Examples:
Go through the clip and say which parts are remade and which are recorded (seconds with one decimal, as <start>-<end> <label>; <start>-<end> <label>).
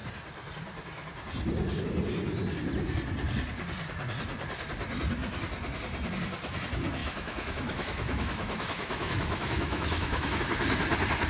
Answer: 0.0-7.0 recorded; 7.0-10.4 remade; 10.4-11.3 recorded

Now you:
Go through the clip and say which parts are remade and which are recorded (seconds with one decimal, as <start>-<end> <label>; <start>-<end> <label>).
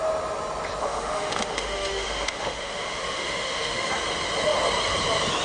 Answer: 0.0-0.8 recorded; 0.8-3.9 remade; 3.9-5.4 recorded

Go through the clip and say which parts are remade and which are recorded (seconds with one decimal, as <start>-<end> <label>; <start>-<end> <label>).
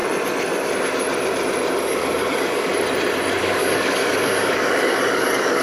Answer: 0.0-1.8 recorded; 1.8-2.7 remade; 2.7-3.4 recorded; 3.4-5.6 remade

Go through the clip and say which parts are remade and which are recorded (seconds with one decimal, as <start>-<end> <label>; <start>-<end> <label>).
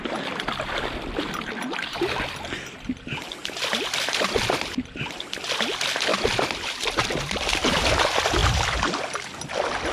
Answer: 0.0-3.4 recorded; 3.4-5.4 remade; 5.4-6.1 recorded; 6.1-6.8 remade; 6.8-8.4 recorded; 8.4-8.9 remade; 8.9-9.9 recorded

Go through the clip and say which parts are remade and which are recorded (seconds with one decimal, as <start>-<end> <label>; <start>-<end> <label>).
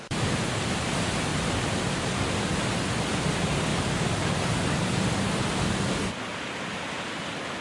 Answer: 0.0-1.3 recorded; 1.3-2.4 remade; 2.4-7.6 recorded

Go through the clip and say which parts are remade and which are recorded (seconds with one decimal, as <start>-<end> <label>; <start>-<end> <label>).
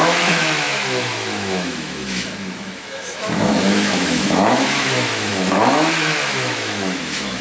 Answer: 0.0-7.4 remade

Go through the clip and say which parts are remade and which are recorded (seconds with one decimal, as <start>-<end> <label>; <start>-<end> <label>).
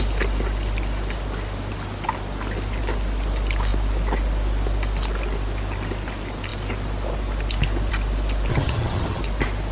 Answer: 0.0-8.5 recorded; 8.5-9.2 remade; 9.2-9.7 recorded